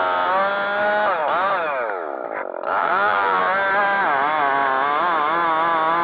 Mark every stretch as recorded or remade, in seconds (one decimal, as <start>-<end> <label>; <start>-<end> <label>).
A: 0.0-2.8 recorded; 2.8-3.4 remade; 3.4-6.0 recorded